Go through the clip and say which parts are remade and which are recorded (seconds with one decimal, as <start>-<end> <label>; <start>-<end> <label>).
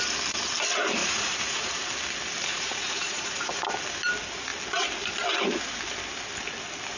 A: 0.0-1.0 recorded; 1.0-1.9 remade; 1.9-2.5 recorded; 2.5-3.6 remade; 3.6-7.0 recorded